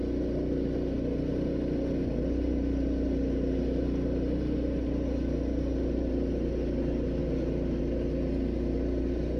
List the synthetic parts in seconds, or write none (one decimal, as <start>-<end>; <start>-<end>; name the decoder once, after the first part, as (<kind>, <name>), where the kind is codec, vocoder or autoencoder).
none